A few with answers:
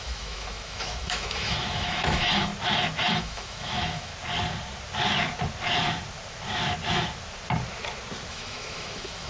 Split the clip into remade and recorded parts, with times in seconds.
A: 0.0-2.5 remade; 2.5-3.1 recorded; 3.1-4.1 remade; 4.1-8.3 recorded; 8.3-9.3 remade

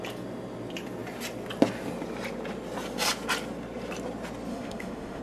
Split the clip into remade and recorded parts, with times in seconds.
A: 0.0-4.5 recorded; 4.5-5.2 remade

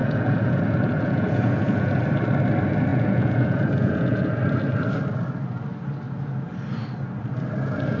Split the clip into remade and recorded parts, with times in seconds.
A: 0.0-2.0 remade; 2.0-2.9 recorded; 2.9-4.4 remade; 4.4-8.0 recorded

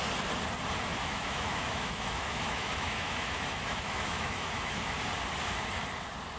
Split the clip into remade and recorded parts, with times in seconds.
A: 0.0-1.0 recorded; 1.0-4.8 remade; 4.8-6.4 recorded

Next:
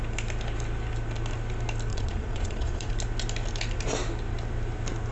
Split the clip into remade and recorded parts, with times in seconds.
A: 0.0-1.9 recorded; 1.9-2.9 remade; 2.9-5.1 recorded